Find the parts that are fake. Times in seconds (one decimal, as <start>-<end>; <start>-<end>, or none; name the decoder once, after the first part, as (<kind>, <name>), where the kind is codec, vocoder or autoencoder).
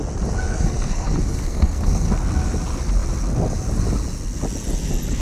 0.5-2.1 (codec, SNAC)